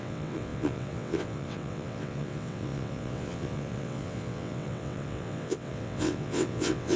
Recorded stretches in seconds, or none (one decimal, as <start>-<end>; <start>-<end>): none